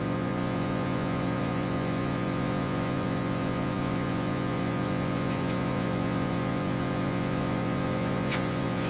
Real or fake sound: fake